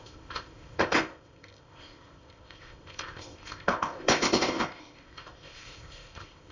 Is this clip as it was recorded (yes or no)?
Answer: no